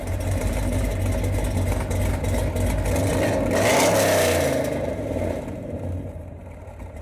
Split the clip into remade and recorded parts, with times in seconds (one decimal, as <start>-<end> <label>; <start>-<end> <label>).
0.0-0.9 remade; 0.9-4.8 recorded; 4.8-7.0 remade